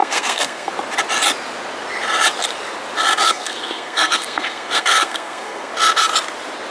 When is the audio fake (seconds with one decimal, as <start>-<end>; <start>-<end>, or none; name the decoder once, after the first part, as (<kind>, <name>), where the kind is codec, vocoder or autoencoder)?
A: 0.0-0.7 (codec, SNAC); 3.2-5.7